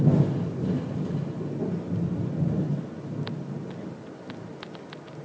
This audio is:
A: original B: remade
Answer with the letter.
A